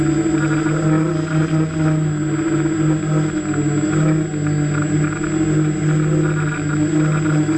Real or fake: real